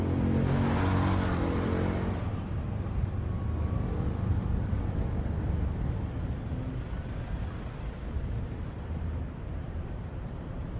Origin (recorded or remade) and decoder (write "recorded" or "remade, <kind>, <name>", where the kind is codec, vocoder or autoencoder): recorded